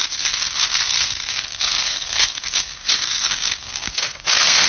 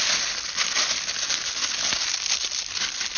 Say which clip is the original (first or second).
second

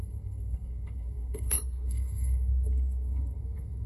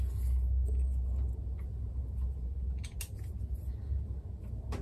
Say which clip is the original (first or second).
second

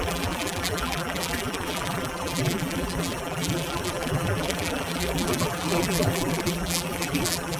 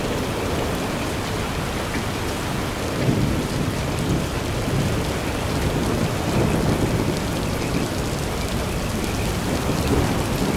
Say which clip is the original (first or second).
second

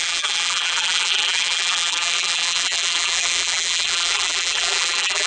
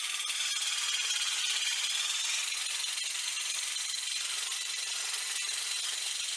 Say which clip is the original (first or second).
second